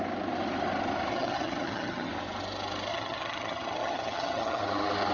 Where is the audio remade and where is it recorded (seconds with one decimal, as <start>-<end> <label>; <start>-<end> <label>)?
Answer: 0.0-1.1 recorded; 1.1-2.1 remade; 2.1-2.9 recorded; 2.9-4.6 remade; 4.6-5.1 recorded